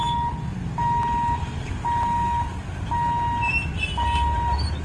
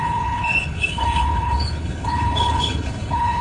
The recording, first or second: first